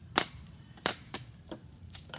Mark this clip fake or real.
fake